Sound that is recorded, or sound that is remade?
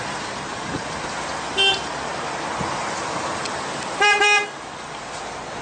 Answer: recorded